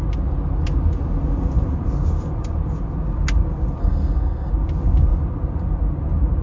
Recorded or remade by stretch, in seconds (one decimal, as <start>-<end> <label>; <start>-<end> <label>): 0.0-3.8 recorded; 3.8-4.5 remade; 4.5-6.4 recorded